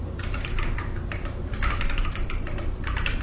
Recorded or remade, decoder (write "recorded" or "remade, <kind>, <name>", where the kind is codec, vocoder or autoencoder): remade, vocoder, BigVGAN v2